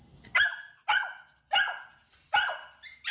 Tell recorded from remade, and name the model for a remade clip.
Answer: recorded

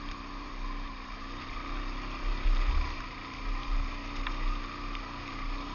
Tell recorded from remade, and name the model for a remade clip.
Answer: recorded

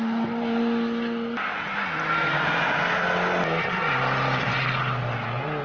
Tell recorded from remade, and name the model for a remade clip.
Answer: recorded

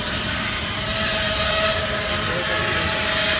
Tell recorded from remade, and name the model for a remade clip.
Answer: recorded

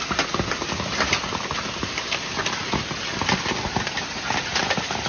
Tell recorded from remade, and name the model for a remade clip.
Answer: recorded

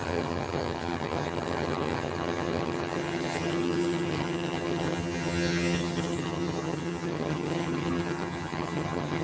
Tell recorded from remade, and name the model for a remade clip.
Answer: remade, vocoder, HiFi-GAN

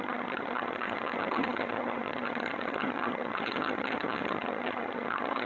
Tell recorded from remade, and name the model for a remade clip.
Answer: remade, vocoder, HiFi-GAN